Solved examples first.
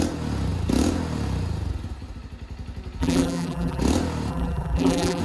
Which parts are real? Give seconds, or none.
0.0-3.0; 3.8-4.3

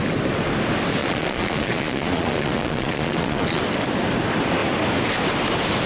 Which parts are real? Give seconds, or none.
0.0-1.0; 3.6-5.9

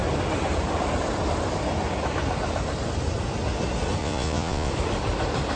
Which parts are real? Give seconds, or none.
0.0-4.0; 4.7-5.6

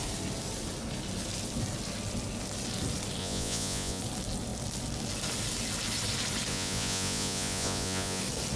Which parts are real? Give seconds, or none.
0.0-3.2; 4.0-6.5; 8.2-8.6

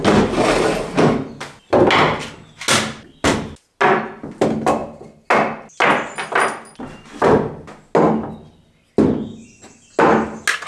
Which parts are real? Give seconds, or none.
0.0-10.7

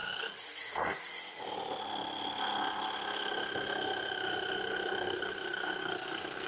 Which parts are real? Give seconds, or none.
1.1-5.0

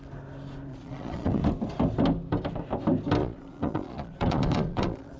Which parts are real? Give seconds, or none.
0.0-0.7; 1.4-3.2

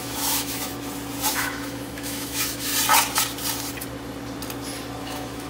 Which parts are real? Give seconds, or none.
0.7-1.3; 2.7-5.0